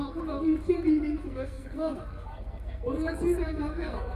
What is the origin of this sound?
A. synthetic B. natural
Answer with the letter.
A